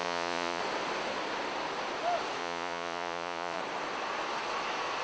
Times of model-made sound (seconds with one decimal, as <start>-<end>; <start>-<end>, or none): 0.0-0.6; 2.4-3.6